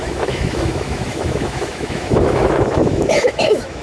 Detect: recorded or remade remade